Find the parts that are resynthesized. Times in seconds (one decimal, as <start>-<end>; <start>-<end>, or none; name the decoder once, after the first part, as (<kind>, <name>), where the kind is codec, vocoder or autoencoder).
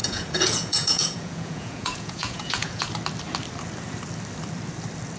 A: 0.0-2.9 (vocoder, Vocos)